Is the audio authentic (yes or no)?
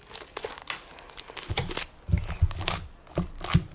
yes